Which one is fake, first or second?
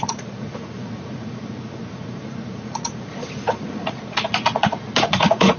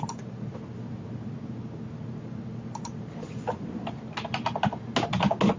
first